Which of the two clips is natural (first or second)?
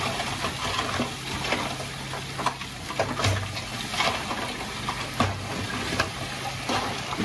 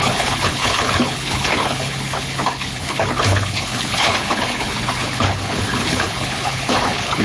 first